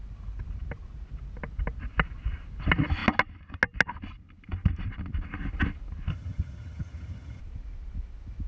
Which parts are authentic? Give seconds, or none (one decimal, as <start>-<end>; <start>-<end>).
0.0-6.1; 7.4-8.5